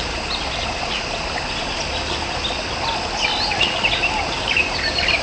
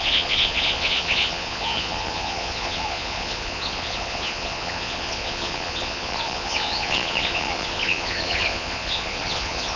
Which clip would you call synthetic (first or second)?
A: second